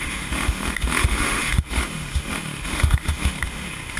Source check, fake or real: fake